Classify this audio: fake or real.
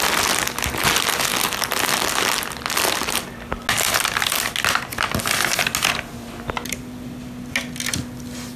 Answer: real